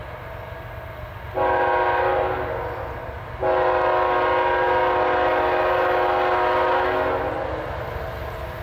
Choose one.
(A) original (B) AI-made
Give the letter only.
A